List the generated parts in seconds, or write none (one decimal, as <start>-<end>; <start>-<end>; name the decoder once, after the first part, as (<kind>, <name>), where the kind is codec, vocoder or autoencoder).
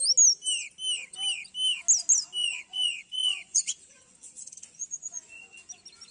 2.4-5.6 (vocoder, Vocos)